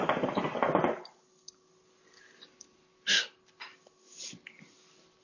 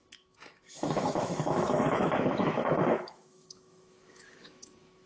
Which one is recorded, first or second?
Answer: first